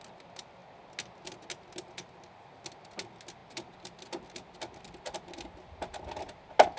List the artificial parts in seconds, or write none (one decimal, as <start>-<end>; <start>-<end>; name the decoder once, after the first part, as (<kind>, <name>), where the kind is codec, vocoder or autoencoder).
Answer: none